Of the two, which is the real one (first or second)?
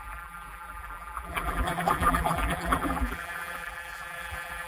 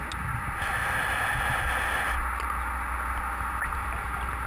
second